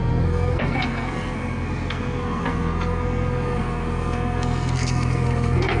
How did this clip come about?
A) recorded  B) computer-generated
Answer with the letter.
B